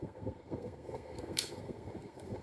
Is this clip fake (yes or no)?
yes